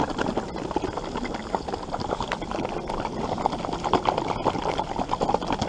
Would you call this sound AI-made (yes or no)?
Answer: no